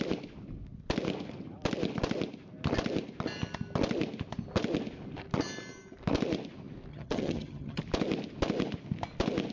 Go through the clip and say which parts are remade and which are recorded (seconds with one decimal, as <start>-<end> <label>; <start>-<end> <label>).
0.0-6.9 recorded; 6.9-7.8 remade; 7.8-9.5 recorded